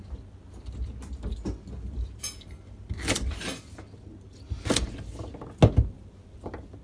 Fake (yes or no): no